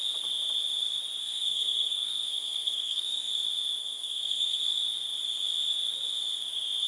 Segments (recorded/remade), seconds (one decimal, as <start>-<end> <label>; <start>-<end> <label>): 0.0-1.2 recorded; 1.2-3.3 remade; 3.3-3.8 recorded; 3.8-4.6 remade; 4.6-6.9 recorded